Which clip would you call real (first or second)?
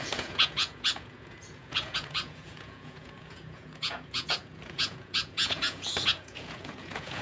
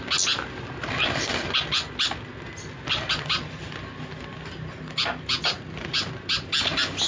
second